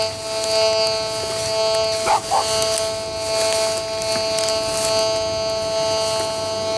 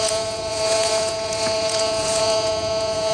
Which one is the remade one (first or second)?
second